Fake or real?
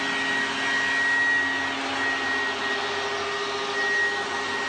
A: real